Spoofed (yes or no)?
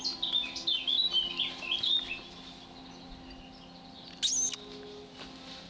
no